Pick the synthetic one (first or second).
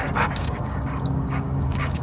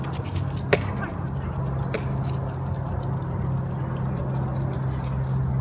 first